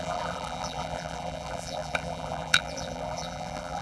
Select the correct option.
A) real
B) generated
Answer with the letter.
B